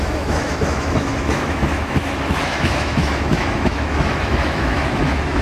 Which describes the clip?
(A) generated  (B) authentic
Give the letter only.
A